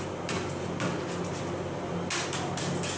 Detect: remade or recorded recorded